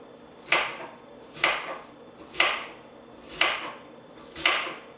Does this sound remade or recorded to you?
remade